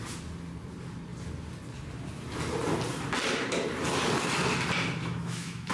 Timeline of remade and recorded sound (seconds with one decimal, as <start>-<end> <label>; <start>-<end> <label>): 0.0-5.0 recorded; 5.0-5.7 remade